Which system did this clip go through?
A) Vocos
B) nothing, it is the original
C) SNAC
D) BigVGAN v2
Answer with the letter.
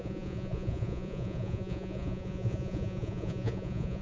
A